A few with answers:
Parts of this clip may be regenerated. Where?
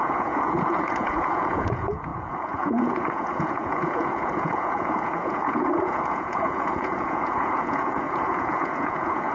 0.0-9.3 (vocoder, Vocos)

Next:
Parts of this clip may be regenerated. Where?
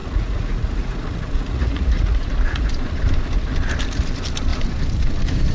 0.0-2.7 (vocoder, Vocos)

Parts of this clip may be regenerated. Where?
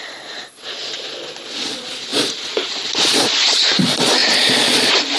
0.0-5.2 (vocoder, Vocos)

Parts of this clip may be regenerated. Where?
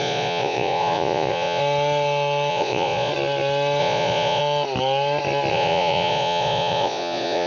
0.0-1.6 (vocoder, Vocos); 2.5-3.1; 3.8-4.4; 5.5-7.5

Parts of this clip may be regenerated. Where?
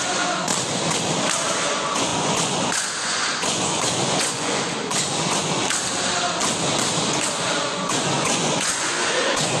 0.0-0.5 (vocoder, Vocos); 1.7-5.6; 7.0-9.6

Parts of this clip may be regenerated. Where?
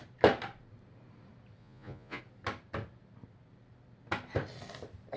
1.6-2.2 (vocoder, Vocos)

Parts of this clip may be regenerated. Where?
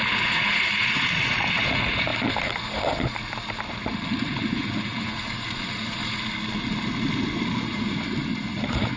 0.0-2.1 (vocoder, Vocos); 4.1-6.0; 7.6-9.0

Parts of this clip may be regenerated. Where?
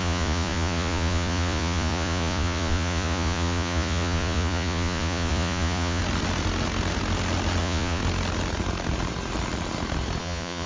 0.0-6.0 (vocoder, Vocos); 7.6-8.0; 10.2-10.7